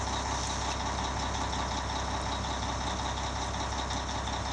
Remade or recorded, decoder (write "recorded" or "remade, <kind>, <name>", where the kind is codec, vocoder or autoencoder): recorded